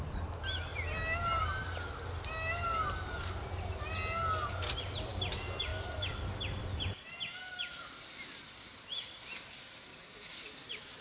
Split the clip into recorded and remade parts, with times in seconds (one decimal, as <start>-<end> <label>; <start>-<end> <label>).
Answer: 0.0-11.0 recorded